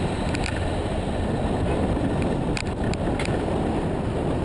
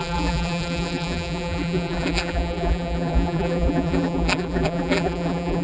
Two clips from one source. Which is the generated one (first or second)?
second